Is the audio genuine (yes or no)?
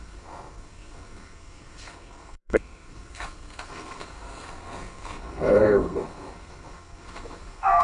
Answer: no